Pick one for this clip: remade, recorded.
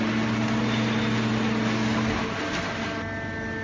recorded